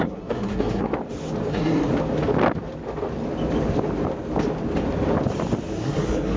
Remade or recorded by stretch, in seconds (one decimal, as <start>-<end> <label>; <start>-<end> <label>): 0.0-0.9 remade; 0.9-1.5 recorded; 1.5-1.9 remade; 1.9-5.7 recorded; 5.7-6.4 remade